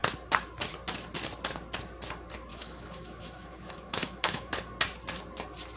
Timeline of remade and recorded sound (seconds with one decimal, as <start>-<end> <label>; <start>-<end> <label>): 0.0-2.5 recorded; 2.5-4.5 remade; 4.5-5.8 recorded

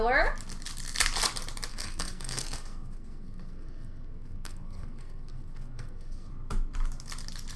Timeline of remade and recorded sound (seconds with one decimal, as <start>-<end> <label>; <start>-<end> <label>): 0.0-1.7 recorded; 1.7-6.3 remade; 6.3-7.6 recorded

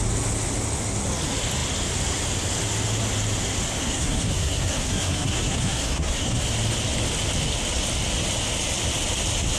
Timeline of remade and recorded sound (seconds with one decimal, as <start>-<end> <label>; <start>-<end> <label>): 0.0-3.8 recorded; 3.8-6.4 remade; 6.4-9.6 recorded